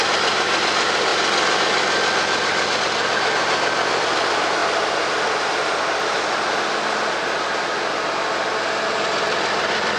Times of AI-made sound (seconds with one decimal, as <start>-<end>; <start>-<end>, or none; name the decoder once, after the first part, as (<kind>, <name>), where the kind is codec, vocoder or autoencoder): none